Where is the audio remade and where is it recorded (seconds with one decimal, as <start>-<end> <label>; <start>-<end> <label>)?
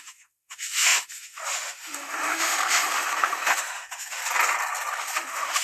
0.0-4.2 remade; 4.2-5.0 recorded; 5.0-5.6 remade